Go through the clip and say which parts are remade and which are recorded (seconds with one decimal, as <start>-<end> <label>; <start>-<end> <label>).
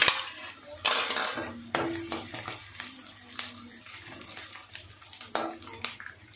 0.0-6.4 recorded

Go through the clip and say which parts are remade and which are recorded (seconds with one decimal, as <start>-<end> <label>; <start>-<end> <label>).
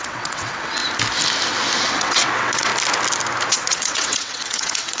0.0-0.8 remade; 0.8-1.8 recorded; 1.8-2.7 remade; 2.7-3.5 recorded; 3.5-5.0 remade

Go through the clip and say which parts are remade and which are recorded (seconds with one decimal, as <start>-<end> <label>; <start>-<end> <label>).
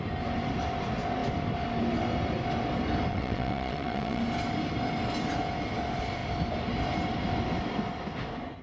0.0-3.1 recorded; 3.1-4.2 remade; 4.2-8.6 recorded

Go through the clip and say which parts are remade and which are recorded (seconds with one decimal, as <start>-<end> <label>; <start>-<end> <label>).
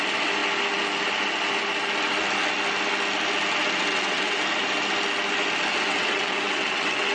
0.0-3.9 recorded; 3.9-4.4 remade; 4.4-5.7 recorded; 5.7-7.1 remade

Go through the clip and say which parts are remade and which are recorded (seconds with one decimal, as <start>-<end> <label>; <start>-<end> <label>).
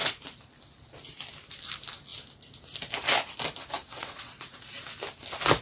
0.0-3.8 recorded; 3.8-4.8 remade; 4.8-5.6 recorded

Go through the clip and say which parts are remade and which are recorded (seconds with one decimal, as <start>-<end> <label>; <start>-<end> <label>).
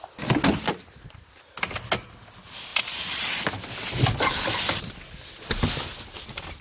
0.0-6.6 recorded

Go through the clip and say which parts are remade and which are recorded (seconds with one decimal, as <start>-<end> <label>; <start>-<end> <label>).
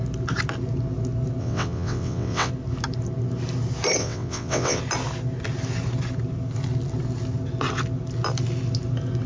0.0-1.4 recorded; 1.4-2.5 remade; 2.5-4.0 recorded; 4.0-4.8 remade; 4.8-9.3 recorded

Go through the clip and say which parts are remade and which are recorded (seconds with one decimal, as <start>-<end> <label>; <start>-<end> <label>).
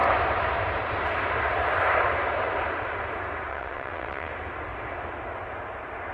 0.0-3.5 recorded; 3.5-4.3 remade; 4.3-6.1 recorded